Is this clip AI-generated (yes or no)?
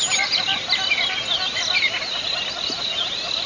no